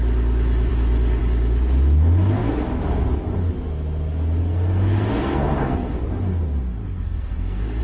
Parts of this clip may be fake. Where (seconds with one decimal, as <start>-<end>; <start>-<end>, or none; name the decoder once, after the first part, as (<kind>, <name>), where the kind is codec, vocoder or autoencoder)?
4.4-6.0 (codec, SNAC); 6.8-7.8